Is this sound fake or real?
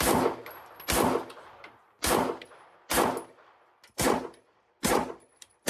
real